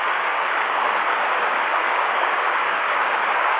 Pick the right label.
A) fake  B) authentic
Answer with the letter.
A